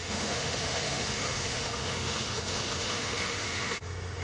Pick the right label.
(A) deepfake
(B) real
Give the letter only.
A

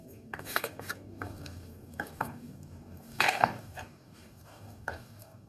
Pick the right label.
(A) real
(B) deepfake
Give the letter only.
B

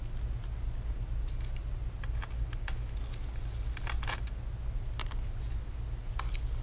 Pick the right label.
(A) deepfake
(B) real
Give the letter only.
B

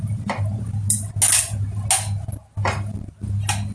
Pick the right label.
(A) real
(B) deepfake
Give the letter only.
A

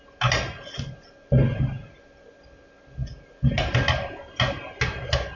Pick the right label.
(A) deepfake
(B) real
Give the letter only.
B